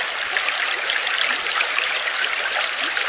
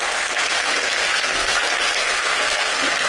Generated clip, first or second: second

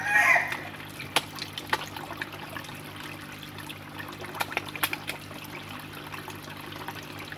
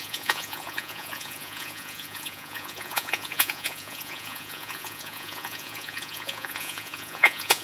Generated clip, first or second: second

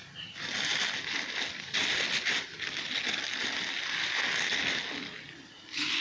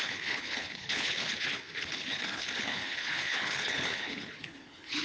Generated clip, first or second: second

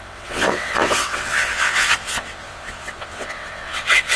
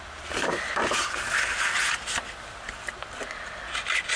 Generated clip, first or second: first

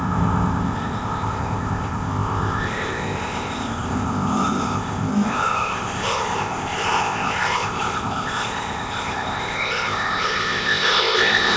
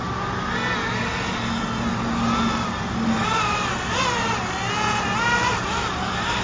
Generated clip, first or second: first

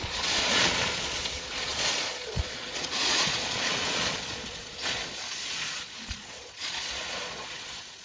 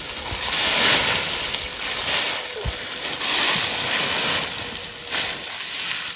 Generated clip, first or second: first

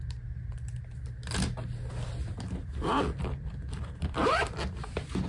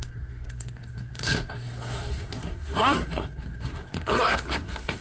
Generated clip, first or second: second